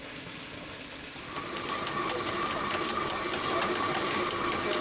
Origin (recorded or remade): recorded